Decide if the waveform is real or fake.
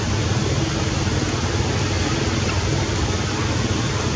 real